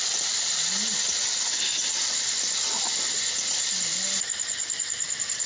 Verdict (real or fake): fake